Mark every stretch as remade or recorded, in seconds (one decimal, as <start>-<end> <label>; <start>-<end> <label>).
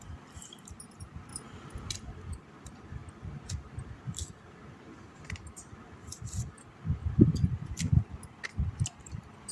0.0-9.5 recorded